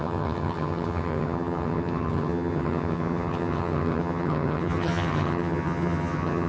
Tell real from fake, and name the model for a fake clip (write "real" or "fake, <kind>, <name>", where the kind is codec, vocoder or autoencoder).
fake, vocoder, HiFi-GAN